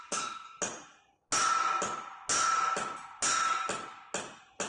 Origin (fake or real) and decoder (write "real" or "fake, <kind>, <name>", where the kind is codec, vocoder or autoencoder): real